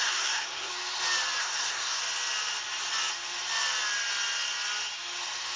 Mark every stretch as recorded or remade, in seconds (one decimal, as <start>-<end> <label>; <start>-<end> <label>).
0.0-0.7 remade; 0.7-1.4 recorded; 1.4-2.0 remade; 2.0-5.6 recorded